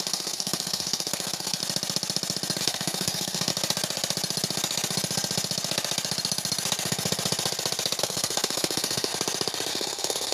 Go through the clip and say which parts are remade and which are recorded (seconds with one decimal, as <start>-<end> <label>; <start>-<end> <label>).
0.0-1.6 remade; 1.6-2.6 recorded; 2.6-3.5 remade; 3.5-8.0 recorded; 8.0-9.1 remade; 9.1-9.7 recorded; 9.7-10.3 remade